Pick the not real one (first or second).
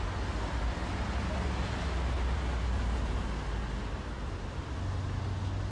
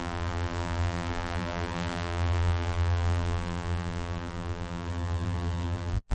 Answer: second